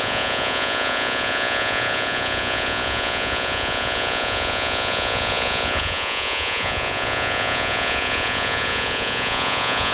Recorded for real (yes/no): no